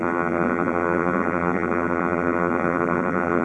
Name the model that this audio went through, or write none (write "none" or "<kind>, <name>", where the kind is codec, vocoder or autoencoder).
vocoder, BigVGAN v2